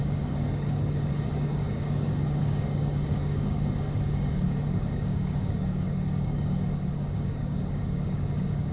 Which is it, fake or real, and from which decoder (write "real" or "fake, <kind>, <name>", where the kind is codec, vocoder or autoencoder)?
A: fake, codec, DAC